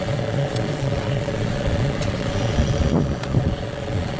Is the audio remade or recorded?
remade